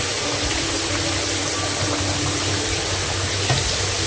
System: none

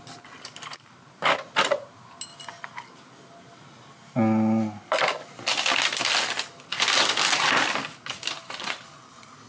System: none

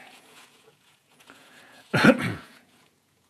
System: vocoder, Vocos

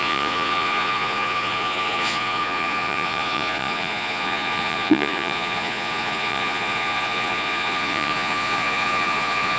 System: vocoder, Vocos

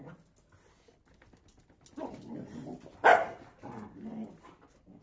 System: none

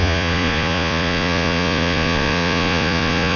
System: vocoder, Vocos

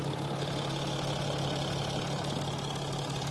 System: none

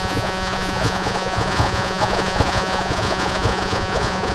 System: vocoder, Vocos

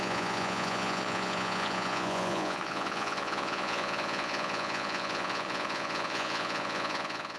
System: vocoder, Vocos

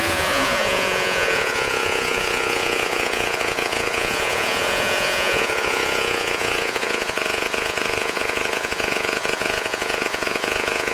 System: vocoder, Vocos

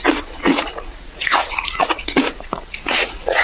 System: vocoder, Vocos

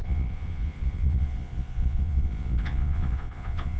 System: vocoder, Vocos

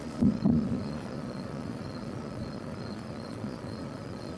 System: vocoder, Vocos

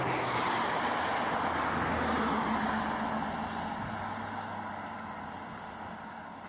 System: none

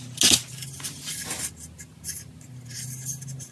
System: none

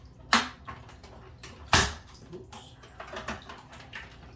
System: none